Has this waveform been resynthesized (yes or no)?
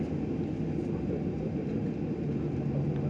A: no